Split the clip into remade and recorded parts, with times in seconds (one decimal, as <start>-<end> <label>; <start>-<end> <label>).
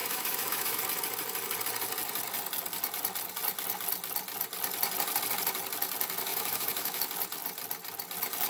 0.0-0.8 remade; 0.8-6.3 recorded; 6.3-7.0 remade; 7.0-8.5 recorded